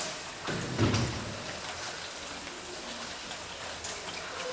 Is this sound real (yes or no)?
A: yes